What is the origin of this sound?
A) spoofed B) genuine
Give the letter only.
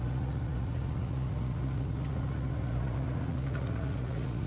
A